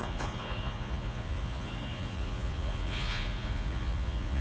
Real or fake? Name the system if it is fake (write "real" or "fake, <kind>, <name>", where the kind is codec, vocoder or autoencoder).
fake, vocoder, Vocos